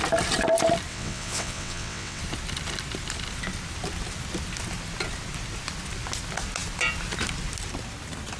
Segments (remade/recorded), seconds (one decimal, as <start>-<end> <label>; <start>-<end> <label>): 0.0-0.9 recorded; 0.9-2.2 remade; 2.2-8.4 recorded